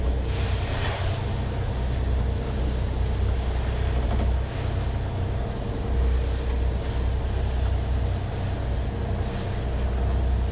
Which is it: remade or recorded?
recorded